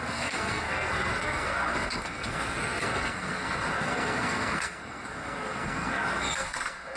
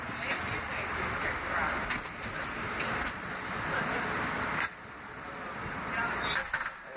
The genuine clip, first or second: second